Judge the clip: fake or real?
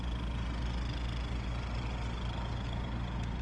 real